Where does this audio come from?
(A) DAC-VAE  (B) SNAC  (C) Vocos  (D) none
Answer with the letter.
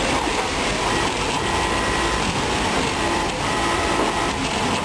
D